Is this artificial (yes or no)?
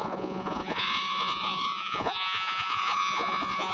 yes